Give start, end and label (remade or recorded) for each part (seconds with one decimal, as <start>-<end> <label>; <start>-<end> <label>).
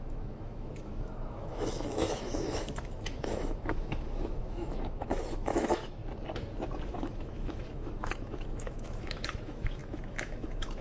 0.0-6.0 remade; 6.0-6.9 recorded; 6.9-10.8 remade